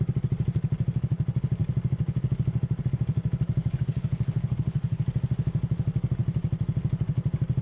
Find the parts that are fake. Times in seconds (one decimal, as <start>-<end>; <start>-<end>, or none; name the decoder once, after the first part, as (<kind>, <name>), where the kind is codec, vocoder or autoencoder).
3.6-5.0 (codec, HILCodec)